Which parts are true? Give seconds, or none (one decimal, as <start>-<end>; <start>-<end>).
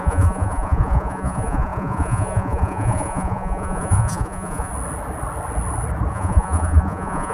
4.7-6.1